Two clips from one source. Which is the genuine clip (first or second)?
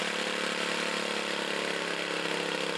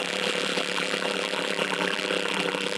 first